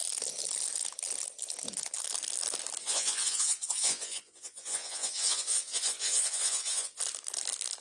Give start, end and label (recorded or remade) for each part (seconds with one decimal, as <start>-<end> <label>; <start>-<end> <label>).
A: 0.0-2.8 recorded; 2.8-7.0 remade; 7.0-7.8 recorded